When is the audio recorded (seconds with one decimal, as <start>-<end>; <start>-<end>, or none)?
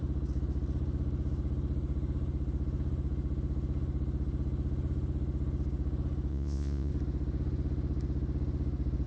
0.0-6.3; 6.9-9.1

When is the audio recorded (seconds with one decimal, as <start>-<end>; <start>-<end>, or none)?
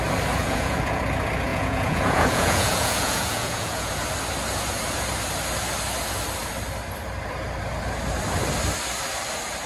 0.0-0.4; 1.0-1.5; 3.9-9.7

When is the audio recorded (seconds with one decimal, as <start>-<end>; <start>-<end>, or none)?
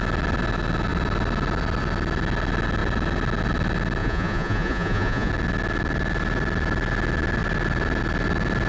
0.0-4.0; 5.3-8.7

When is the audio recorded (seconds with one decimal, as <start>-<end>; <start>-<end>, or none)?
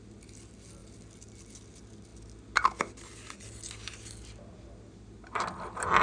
0.0-6.0